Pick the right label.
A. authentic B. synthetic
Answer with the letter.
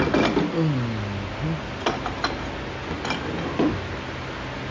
A